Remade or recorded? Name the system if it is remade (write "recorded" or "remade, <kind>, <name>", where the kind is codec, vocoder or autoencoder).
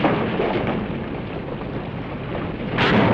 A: recorded